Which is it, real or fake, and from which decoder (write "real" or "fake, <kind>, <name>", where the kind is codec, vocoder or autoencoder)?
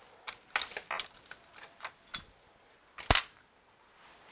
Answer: real